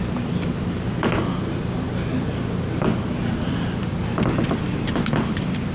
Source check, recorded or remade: recorded